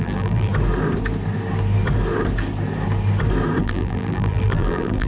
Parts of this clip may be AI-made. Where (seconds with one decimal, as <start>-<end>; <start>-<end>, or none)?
0.0-0.5; 3.6-5.1